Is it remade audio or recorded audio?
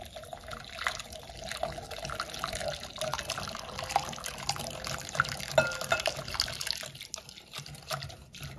recorded